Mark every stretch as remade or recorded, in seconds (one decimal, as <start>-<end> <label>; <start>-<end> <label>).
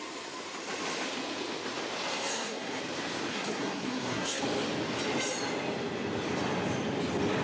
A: 0.0-2.1 recorded; 2.1-2.8 remade; 2.8-3.3 recorded; 3.3-4.4 remade; 4.4-7.4 recorded